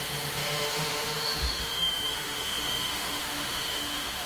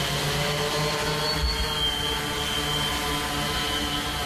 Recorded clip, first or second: second